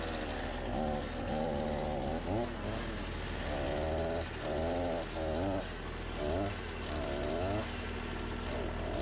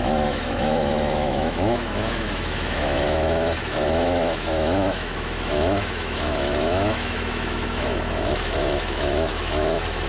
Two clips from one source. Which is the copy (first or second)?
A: second